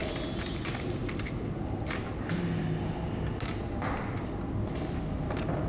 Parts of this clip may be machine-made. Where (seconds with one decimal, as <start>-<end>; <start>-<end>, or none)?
none